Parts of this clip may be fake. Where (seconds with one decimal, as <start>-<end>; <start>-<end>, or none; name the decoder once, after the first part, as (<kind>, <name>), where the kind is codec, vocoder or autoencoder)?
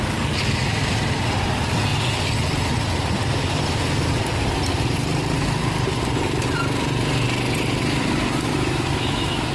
8.5-9.5 (autoencoder, DAC-VAE)